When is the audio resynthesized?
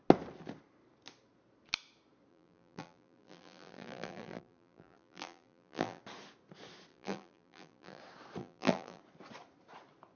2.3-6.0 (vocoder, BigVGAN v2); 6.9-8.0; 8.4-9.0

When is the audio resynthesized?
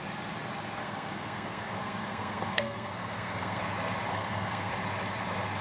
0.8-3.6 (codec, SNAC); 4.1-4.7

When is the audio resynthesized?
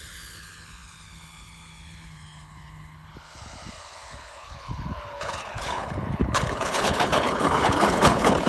0.0-8.5 (codec, HILCodec)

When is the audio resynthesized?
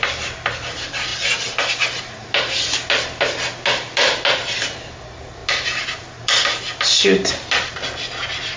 none